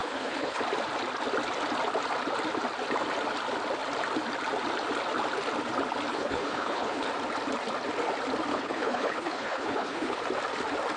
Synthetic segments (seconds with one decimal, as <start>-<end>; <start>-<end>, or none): 0.0-0.6; 6.1-7.1; 8.5-10.2